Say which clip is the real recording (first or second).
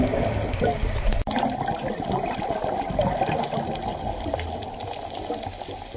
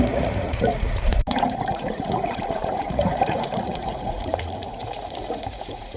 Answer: first